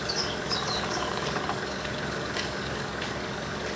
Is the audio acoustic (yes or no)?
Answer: no